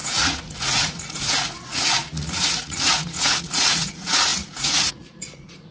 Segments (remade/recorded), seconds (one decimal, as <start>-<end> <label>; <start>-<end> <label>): 0.0-5.7 remade